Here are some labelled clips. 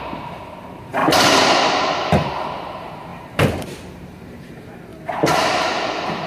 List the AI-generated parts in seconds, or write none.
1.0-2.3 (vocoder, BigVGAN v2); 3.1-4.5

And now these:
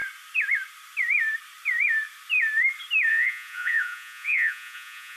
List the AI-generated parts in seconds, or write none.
3.1-5.2 (vocoder, Vocos)

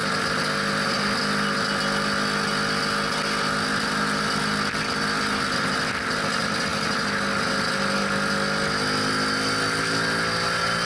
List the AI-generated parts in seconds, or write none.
none

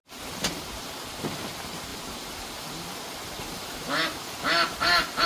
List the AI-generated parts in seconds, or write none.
none

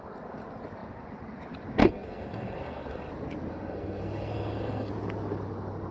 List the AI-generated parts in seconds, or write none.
1.8-3.1 (codec, SNAC); 3.5-4.9